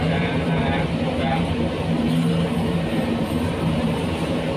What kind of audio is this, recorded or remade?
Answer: remade